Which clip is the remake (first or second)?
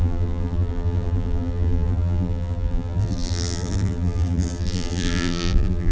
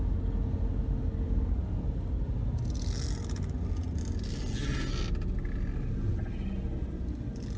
first